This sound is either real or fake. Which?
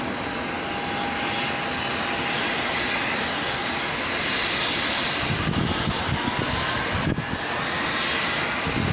real